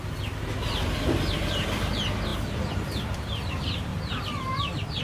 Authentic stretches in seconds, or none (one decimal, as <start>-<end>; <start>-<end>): 0.0-5.0